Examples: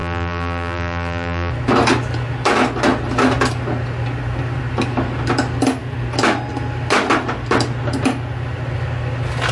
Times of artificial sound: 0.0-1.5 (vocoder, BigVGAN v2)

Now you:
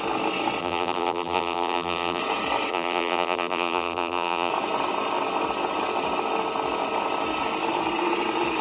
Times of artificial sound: 0.6-2.2 (vocoder, BigVGAN v2); 2.7-4.5

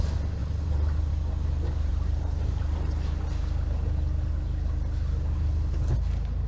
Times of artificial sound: 0.4-1.1 (vocoder, BigVGAN v2); 1.9-3.2

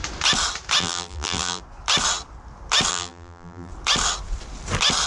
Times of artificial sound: 0.8-1.6 (vocoder, BigVGAN v2); 2.9-3.7

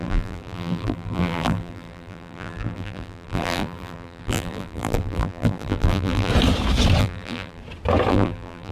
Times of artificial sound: 0.0-6.3 (vocoder, BigVGAN v2); 7.0-7.6; 8.1-8.7